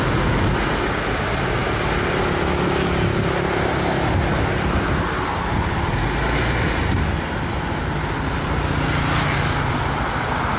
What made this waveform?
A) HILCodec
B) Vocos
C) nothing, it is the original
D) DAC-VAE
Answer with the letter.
C